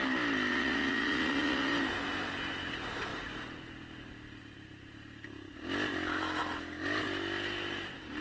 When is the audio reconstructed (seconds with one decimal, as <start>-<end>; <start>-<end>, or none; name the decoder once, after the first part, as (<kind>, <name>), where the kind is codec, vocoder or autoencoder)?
0.5-1.7 (vocoder, Vocos)